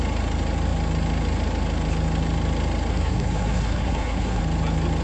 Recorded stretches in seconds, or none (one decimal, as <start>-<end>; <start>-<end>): 0.0-2.9; 4.4-5.0